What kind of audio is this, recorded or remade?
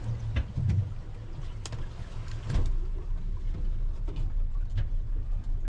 recorded